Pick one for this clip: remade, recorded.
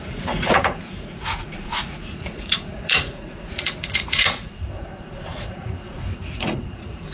remade